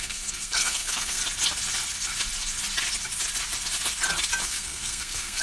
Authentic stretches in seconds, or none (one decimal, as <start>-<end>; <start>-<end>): 1.2-4.4